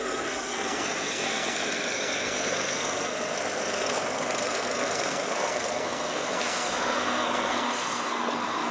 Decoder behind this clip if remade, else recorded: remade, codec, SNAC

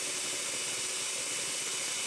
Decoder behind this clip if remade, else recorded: recorded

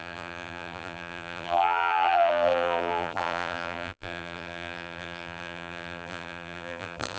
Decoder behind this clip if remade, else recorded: remade, vocoder, BigVGAN v2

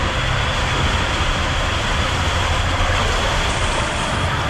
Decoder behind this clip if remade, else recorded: recorded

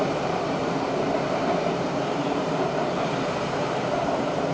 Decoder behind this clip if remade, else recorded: remade, vocoder, BigVGAN v2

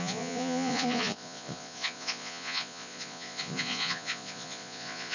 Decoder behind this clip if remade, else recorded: remade, vocoder, Vocos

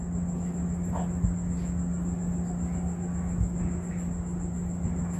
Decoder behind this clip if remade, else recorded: recorded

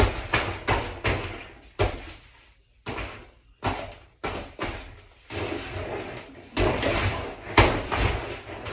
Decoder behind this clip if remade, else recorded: recorded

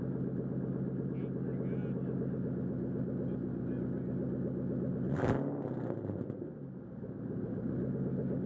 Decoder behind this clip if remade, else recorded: recorded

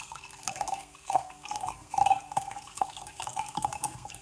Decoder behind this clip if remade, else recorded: remade, codec, SNAC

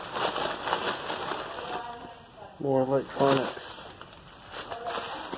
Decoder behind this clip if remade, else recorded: recorded